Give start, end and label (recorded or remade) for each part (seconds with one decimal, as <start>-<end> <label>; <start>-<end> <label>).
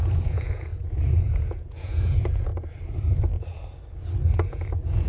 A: 0.0-2.5 remade; 2.5-4.5 recorded; 4.5-5.1 remade